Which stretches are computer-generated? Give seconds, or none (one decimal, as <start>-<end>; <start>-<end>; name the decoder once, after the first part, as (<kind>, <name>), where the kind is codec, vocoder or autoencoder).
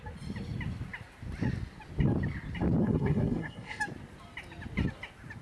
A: 2.8-3.8 (codec, SNAC)